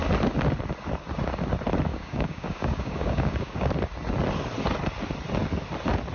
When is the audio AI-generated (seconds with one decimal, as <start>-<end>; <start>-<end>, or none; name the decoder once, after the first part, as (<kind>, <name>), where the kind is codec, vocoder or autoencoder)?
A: 1.9-3.7 (codec, DAC)